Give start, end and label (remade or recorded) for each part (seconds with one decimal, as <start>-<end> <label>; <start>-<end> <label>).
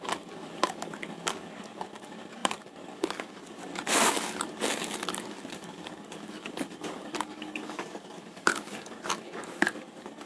0.0-10.3 remade